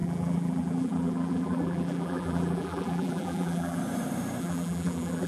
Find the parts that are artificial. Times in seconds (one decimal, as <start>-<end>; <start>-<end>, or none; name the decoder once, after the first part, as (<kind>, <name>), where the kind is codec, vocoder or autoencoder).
0.0-3.8 (vocoder, BigVGAN v2); 4.4-5.3